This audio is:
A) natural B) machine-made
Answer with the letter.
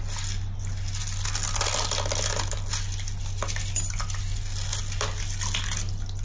A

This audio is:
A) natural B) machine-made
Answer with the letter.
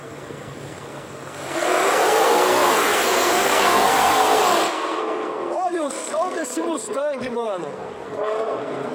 B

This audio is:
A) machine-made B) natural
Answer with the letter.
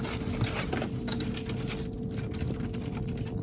B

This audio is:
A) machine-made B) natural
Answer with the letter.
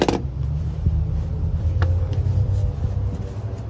B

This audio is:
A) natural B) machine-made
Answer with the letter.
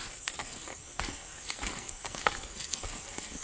B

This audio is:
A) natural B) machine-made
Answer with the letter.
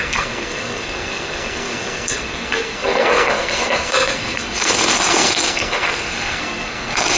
B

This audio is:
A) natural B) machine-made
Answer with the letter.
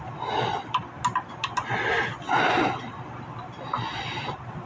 A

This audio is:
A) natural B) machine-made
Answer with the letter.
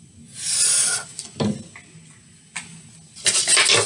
A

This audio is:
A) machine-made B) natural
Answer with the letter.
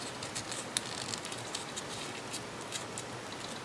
B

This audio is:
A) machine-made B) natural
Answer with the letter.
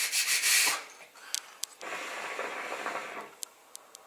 B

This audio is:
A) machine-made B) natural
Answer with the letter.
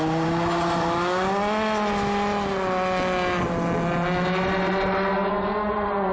B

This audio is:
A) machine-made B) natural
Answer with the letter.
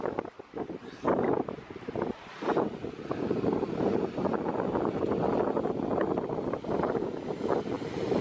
B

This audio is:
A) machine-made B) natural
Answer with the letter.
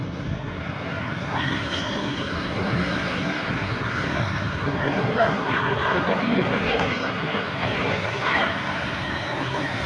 A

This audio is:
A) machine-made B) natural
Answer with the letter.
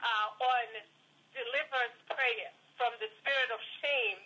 B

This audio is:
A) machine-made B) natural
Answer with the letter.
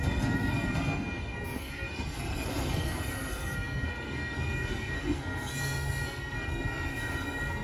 A